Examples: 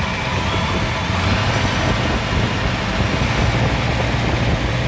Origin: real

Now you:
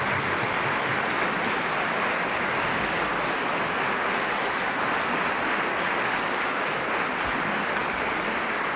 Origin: real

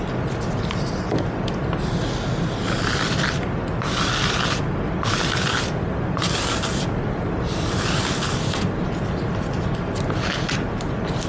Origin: real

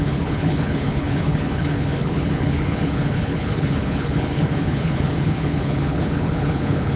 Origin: fake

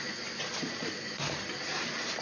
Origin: real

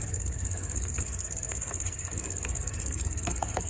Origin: fake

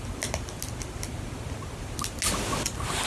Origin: real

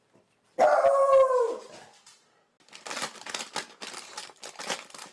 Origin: real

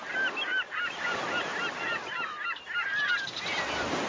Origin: real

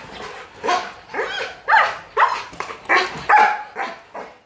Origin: real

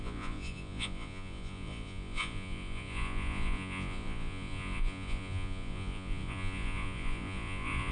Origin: fake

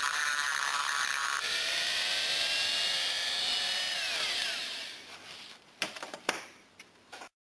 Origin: fake